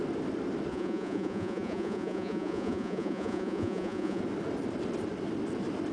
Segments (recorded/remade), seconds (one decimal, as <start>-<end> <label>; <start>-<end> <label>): 0.0-0.7 recorded; 0.7-4.2 remade; 4.2-5.9 recorded